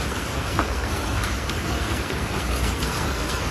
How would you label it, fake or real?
fake